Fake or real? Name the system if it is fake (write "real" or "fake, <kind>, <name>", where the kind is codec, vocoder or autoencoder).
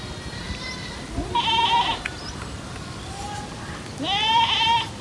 real